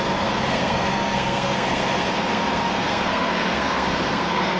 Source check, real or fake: fake